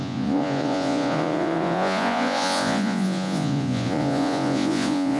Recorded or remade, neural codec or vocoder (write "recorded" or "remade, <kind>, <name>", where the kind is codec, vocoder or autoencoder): remade, vocoder, Vocos